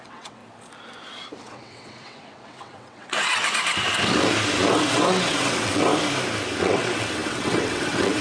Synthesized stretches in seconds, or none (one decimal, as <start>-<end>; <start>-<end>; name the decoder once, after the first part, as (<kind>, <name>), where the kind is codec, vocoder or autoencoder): 0.0-0.4 (vocoder, WaveNeXt); 1.4-3.3; 4.7-5.9; 6.6-8.2